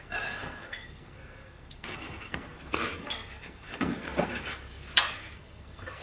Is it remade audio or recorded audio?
remade